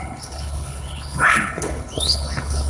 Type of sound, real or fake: fake